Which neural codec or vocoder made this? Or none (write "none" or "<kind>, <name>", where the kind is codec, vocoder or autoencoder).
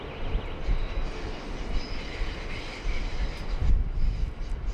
none